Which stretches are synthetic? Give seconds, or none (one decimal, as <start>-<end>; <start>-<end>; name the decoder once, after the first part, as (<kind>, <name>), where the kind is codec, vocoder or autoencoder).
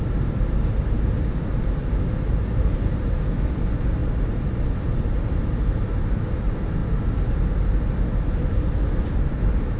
4.0-5.2 (vocoder, BigVGAN v2)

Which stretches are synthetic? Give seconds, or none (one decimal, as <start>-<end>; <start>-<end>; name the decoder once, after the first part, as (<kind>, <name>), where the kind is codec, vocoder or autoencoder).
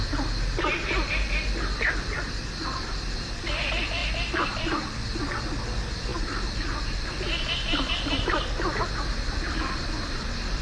none